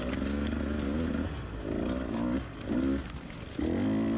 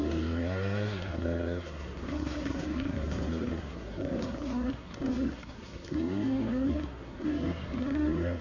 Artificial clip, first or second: second